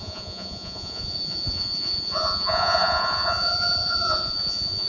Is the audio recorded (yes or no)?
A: no